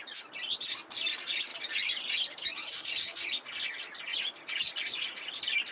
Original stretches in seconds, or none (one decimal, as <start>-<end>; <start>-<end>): 0.0-1.5; 3.0-5.7